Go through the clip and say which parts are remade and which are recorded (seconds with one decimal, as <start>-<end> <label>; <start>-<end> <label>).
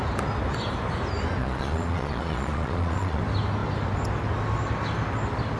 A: 0.0-1.4 recorded; 1.4-3.2 remade; 3.2-5.6 recorded